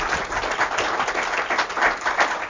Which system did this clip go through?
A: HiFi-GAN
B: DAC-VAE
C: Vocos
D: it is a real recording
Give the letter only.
D